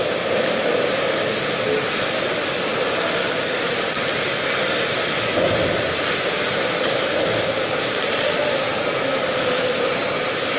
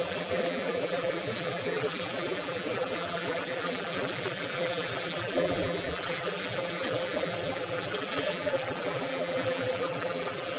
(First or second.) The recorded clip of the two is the first